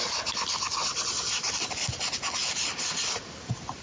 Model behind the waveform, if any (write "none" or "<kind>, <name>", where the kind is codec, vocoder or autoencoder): none